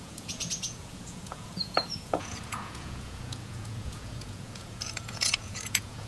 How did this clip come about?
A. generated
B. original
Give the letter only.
A